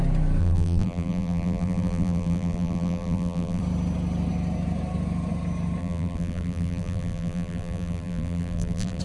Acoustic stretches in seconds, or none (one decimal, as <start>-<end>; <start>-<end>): 0.0-0.4; 3.6-5.8